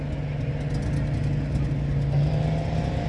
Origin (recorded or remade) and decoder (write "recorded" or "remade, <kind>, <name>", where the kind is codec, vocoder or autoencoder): recorded